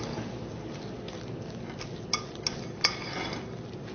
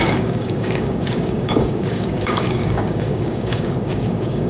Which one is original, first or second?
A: first